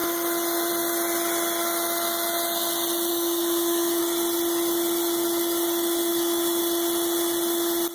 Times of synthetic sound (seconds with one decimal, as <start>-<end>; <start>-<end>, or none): 3.1-4.0; 6.1-6.6

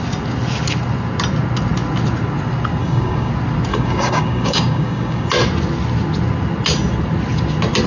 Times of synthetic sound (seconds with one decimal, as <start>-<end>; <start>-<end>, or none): 2.8-3.3; 3.7-5.3